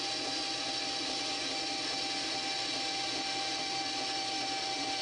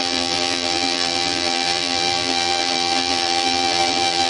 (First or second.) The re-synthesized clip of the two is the second